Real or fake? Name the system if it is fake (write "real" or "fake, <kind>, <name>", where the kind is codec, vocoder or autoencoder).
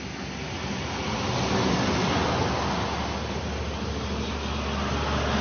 real